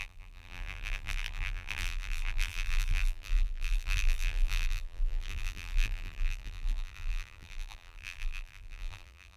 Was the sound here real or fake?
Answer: fake